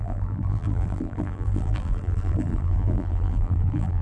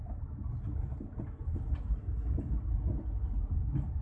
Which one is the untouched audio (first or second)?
second